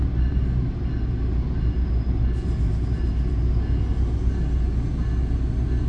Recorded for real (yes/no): yes